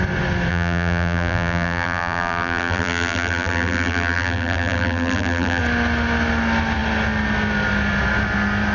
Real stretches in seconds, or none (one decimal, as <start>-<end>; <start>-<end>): 0.0-0.5; 5.6-8.7